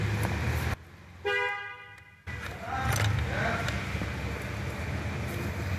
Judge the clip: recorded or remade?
recorded